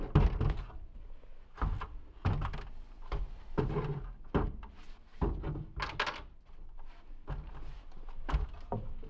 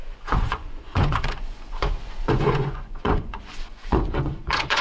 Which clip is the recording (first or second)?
first